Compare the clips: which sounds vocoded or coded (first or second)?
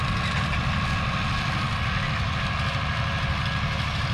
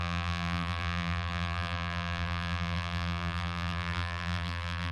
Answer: second